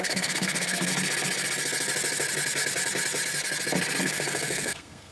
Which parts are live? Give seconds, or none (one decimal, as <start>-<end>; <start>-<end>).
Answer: 0.9-4.0